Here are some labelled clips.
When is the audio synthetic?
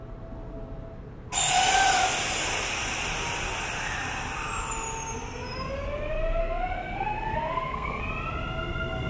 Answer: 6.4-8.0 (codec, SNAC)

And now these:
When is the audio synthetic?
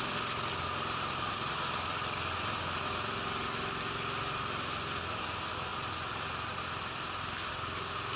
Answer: none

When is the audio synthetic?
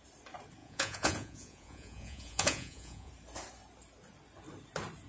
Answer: 0.6-3.1 (vocoder, Vocos)